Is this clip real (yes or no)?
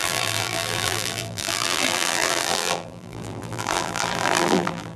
no